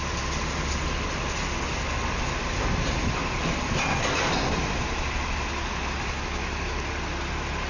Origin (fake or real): real